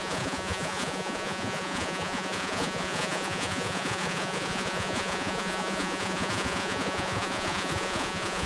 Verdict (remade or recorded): remade